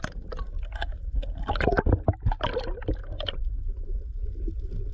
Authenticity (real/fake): real